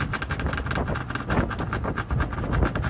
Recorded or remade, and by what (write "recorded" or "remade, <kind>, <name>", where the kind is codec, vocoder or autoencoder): recorded